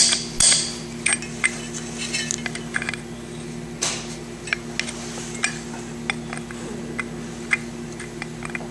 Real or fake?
real